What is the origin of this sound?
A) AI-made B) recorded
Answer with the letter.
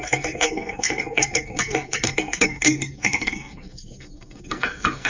A